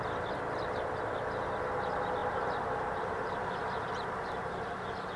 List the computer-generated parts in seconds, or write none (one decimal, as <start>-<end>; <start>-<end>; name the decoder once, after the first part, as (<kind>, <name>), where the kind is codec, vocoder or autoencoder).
2.2-5.2 (vocoder, BigVGAN v2)